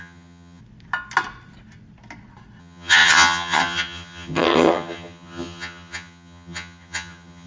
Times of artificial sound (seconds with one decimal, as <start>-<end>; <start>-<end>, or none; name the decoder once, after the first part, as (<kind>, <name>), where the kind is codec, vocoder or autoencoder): 0.0-0.6 (vocoder, HiFi-GAN); 2.6-7.5